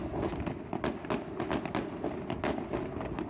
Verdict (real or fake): real